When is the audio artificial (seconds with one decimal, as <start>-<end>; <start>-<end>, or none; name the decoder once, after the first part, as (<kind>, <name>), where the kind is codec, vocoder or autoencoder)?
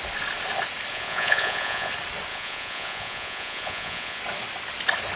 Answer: 0.9-1.9 (vocoder, Vocos); 2.3-4.2